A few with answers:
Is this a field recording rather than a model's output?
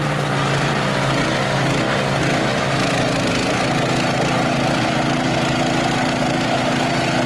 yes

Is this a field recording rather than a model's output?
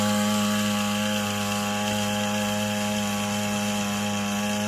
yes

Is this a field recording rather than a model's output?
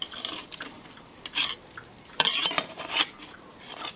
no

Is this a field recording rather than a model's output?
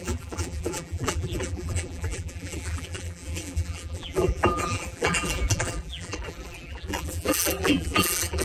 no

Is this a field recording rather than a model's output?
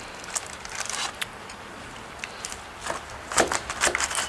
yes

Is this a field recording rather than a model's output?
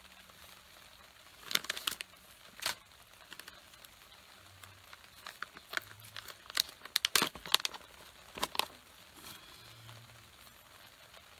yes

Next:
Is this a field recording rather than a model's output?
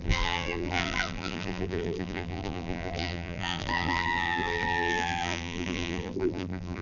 no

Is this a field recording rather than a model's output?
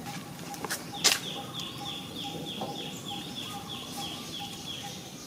no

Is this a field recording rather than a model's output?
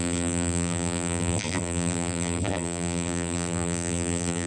no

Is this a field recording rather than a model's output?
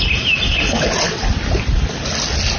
yes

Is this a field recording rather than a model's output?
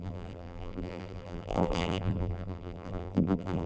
no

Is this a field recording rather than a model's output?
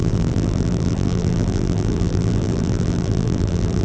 no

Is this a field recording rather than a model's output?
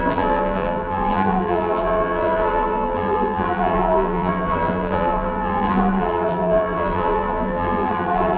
no